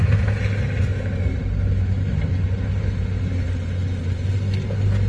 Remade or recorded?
recorded